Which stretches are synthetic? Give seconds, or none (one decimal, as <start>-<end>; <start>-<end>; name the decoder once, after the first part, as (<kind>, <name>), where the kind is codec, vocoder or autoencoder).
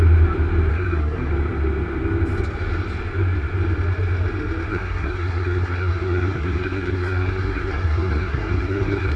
0.7-1.3 (codec, SNAC); 4.7-9.2